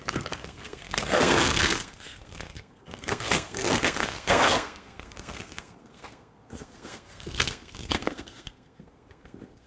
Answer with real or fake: fake